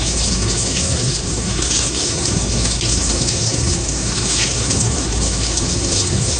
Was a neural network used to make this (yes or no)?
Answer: yes